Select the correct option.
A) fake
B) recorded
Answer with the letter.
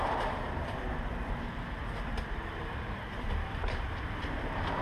A